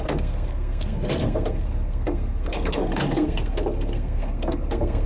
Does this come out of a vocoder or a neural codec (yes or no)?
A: yes